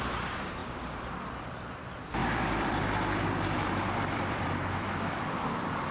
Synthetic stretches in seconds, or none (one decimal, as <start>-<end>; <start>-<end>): 2.2-5.9